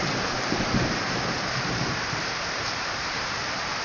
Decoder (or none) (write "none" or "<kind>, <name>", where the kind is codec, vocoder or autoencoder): vocoder, BigVGAN v2